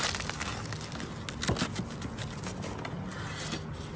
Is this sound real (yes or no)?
yes